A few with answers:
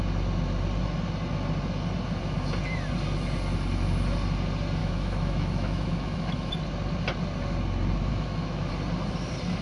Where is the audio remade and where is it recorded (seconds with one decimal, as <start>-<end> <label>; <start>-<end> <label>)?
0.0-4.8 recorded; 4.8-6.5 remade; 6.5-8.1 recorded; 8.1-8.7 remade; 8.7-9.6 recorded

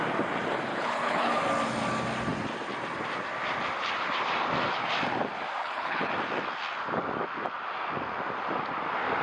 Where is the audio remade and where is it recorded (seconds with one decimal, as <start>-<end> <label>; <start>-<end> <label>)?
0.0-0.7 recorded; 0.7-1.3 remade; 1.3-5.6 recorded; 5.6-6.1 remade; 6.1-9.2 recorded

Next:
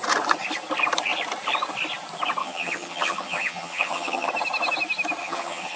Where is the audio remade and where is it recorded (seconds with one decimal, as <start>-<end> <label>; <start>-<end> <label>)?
0.0-2.4 recorded; 2.4-4.3 remade; 4.3-5.2 recorded; 5.2-5.8 remade

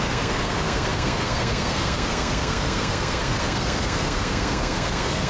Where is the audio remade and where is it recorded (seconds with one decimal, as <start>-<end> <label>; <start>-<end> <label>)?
0.0-5.3 remade